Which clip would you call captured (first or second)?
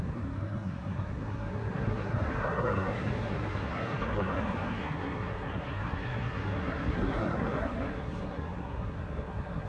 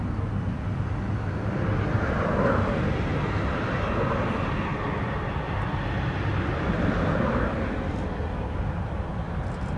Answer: second